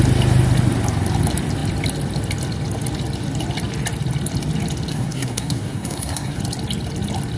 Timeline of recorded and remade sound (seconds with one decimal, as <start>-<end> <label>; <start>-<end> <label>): 0.0-4.9 recorded; 4.9-6.4 remade; 6.4-7.4 recorded